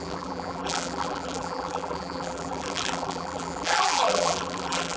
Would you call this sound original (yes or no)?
no